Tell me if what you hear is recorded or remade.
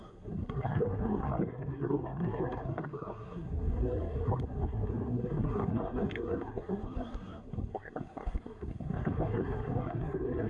remade